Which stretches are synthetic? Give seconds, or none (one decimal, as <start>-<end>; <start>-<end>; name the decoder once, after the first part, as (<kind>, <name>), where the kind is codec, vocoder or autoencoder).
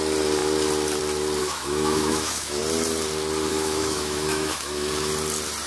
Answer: 1.4-2.6 (autoencoder, DAC-VAE); 3.5-4.9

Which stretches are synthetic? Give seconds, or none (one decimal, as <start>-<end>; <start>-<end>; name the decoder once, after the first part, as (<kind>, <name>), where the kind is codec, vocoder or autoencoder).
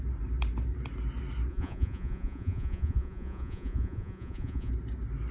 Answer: 1.5-4.7 (vocoder, Vocos)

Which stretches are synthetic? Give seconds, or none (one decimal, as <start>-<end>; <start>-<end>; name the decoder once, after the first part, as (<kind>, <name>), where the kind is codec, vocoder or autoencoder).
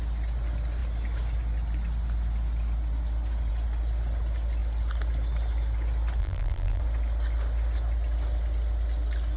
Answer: 6.2-6.8 (vocoder, BigVGAN v2)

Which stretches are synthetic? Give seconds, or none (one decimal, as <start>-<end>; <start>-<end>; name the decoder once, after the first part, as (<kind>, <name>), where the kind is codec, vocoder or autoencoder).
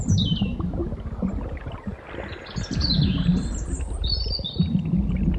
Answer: none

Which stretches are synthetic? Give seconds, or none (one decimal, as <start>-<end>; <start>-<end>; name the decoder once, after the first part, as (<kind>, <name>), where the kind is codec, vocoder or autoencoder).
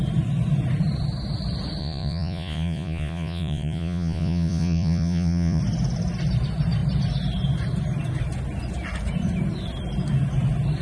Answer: 1.8-5.6 (vocoder, Vocos)